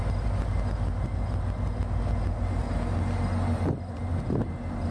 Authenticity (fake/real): real